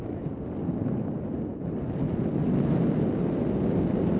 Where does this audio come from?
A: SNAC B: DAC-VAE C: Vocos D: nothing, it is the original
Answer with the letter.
D